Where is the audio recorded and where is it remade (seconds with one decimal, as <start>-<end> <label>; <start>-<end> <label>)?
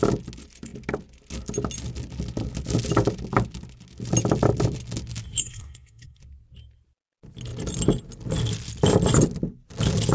0.0-5.4 recorded; 5.4-6.2 remade; 6.2-10.1 recorded